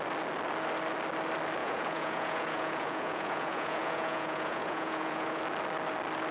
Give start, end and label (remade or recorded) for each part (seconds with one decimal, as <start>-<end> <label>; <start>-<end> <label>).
0.0-1.6 recorded; 1.6-5.4 remade; 5.4-6.3 recorded